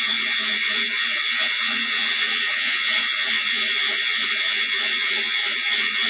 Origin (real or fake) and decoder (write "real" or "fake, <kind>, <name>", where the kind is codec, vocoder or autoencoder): fake, vocoder, Vocos